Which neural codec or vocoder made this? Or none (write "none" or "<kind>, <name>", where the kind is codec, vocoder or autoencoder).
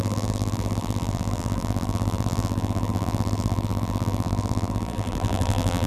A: vocoder, BigVGAN v2